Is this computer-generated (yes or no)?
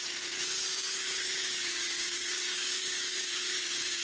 yes